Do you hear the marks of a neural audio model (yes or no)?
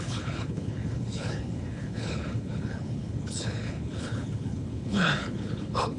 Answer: yes